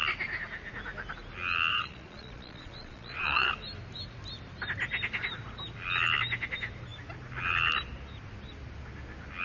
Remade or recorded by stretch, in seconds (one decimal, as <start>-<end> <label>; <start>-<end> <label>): 0.0-1.7 recorded; 1.7-3.5 remade; 3.5-9.4 recorded